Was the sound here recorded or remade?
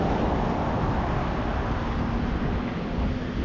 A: recorded